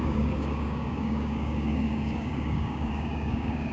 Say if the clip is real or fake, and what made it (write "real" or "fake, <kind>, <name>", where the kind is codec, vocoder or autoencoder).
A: fake, codec, DAC